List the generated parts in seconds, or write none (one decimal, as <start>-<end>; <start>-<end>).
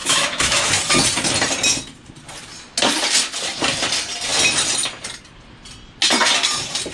0.0-0.7